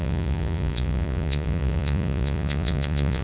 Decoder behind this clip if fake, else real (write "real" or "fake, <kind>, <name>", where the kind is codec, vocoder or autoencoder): fake, vocoder, Vocos